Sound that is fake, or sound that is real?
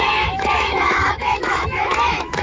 fake